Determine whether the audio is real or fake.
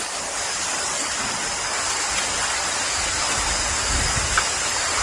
real